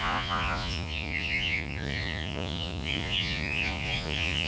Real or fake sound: fake